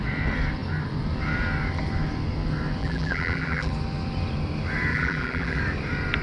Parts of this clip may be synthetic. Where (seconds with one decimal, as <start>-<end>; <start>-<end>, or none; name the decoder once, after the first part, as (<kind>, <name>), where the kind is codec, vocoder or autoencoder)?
2.8-3.7 (vocoder, BigVGAN v2); 4.9-5.6